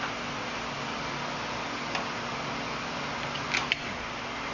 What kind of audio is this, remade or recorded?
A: recorded